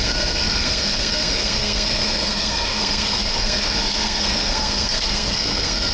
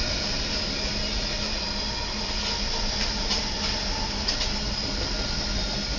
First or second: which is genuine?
second